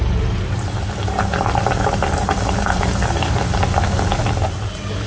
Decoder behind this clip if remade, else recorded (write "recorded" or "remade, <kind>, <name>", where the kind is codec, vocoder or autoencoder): recorded